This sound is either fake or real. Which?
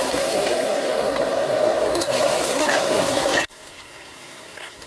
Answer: fake